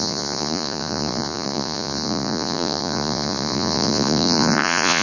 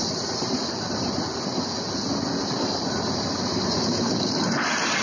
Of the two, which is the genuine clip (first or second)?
second